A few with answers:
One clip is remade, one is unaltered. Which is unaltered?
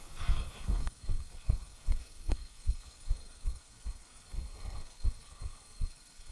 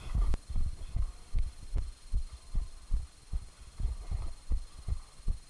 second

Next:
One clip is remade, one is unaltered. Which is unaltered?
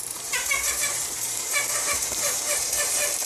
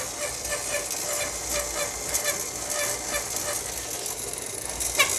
second